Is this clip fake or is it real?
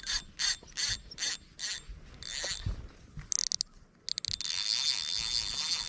real